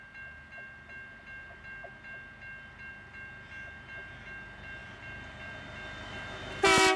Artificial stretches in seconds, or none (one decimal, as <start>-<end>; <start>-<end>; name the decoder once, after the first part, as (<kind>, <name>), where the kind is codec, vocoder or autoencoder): none